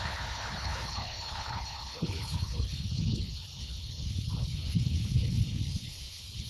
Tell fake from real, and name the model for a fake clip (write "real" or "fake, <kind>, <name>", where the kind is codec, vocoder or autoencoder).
fake, codec, HILCodec